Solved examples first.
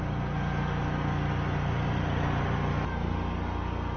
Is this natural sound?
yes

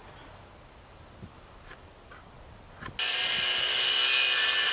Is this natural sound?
yes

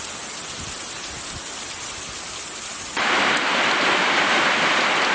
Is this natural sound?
yes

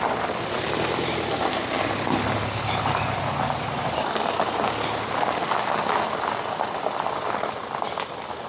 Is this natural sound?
yes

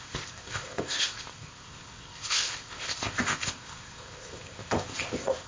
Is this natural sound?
no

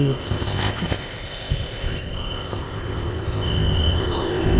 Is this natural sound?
no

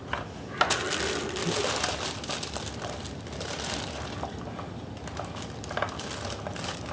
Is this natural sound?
yes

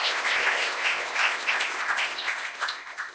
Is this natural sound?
no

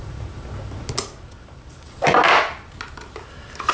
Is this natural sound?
yes